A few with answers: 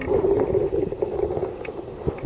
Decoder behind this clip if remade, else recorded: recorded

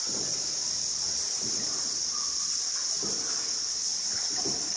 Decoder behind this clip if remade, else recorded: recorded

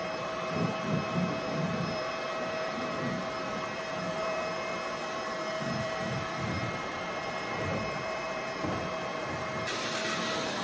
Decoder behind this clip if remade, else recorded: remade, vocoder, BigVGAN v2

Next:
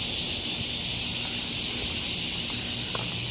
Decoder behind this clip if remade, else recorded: recorded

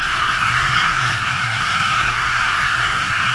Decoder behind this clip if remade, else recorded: remade, codec, SNAC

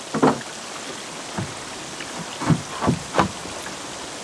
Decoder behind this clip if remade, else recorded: recorded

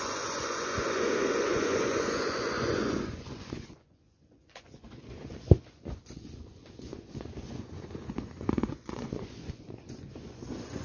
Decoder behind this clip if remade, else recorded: remade, vocoder, Vocos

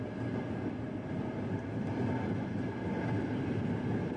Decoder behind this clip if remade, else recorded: recorded